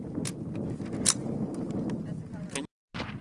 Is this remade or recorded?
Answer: recorded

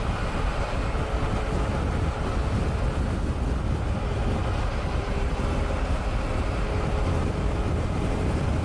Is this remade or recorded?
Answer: recorded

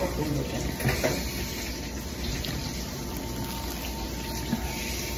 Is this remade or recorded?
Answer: recorded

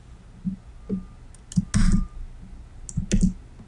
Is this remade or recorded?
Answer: recorded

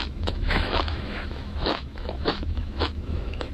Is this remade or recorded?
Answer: remade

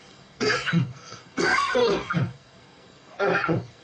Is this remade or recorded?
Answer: remade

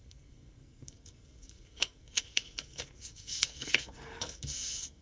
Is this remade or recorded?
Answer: remade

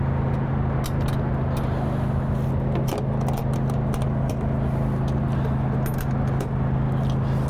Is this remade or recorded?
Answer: recorded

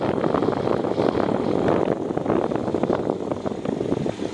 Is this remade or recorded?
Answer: recorded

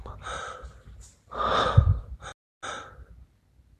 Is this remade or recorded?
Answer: recorded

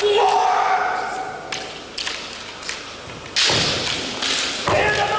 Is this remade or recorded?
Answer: recorded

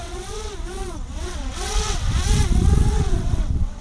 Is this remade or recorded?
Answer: remade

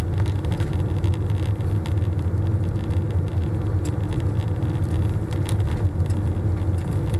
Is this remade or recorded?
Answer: recorded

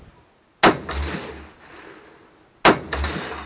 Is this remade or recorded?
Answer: recorded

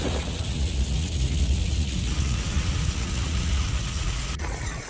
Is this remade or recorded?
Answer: remade